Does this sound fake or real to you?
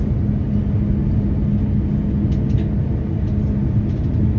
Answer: real